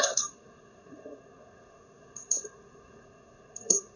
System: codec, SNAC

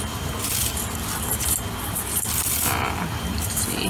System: none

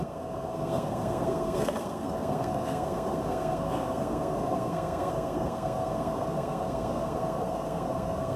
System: codec, SNAC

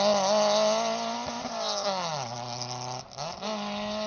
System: none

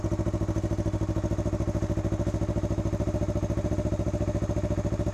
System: none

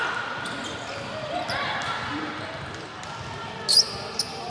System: none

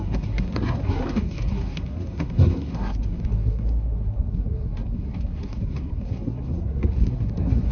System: codec, SNAC